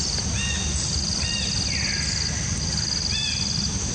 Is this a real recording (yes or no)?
yes